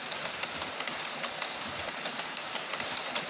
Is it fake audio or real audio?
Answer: real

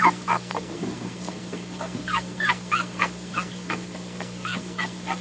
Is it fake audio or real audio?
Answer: fake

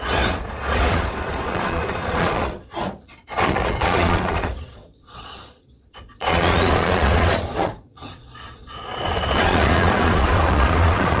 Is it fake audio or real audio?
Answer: fake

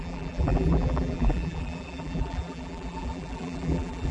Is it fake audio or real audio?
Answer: fake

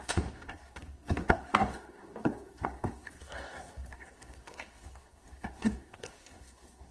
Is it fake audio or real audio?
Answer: fake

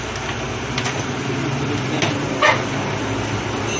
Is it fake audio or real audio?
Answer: real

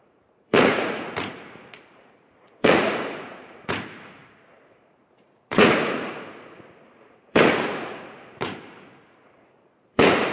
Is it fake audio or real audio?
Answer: fake